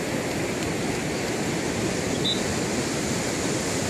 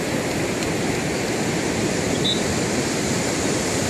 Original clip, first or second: first